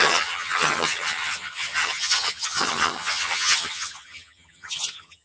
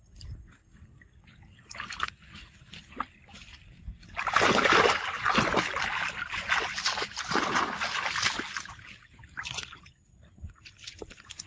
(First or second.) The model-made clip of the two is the first